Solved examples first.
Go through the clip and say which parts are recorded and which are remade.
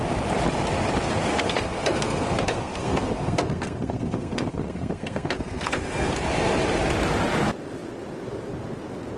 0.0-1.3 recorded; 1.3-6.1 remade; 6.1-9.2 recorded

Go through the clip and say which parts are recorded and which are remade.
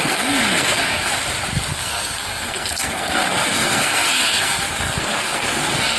0.0-1.1 remade; 1.1-1.7 recorded; 1.7-6.0 remade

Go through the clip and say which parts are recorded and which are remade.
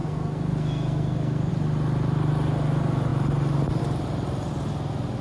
0.0-1.5 remade; 1.5-5.2 recorded